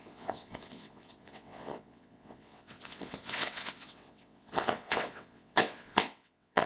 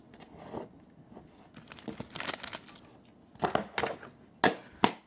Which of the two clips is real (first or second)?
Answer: second